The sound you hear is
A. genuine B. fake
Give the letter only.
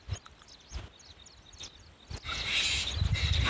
A